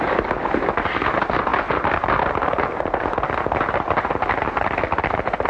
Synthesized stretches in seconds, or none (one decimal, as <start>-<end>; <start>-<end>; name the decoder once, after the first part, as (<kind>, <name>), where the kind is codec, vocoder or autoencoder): none